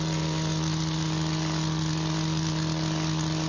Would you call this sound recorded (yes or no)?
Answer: yes